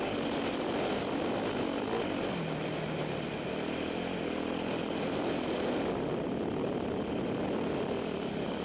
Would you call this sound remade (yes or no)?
no